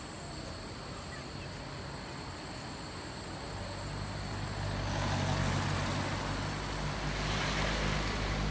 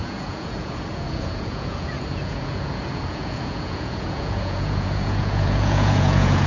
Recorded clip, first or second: first